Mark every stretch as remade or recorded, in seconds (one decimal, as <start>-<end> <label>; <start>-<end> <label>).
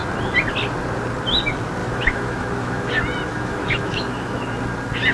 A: 0.0-1.8 recorded; 1.8-2.9 remade; 2.9-3.3 recorded; 3.3-4.4 remade; 4.4-5.1 recorded